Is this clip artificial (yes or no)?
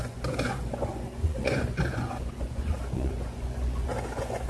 yes